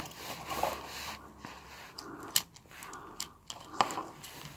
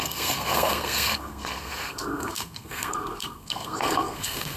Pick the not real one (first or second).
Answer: second